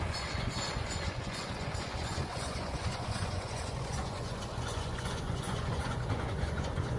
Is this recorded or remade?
remade